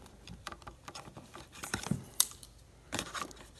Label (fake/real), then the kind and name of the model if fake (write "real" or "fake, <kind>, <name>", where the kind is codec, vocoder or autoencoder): fake, vocoder, BigVGAN v2